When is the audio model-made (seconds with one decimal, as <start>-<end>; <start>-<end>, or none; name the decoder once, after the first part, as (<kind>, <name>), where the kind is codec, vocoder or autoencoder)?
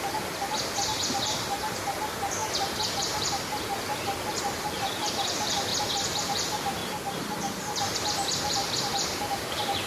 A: 0.0-5.7 (vocoder, BigVGAN v2); 6.2-9.9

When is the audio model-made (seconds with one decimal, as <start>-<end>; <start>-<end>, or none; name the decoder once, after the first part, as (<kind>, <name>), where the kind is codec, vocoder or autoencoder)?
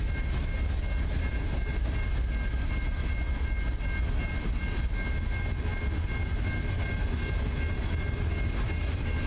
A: none